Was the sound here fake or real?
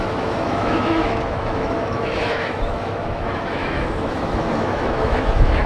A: fake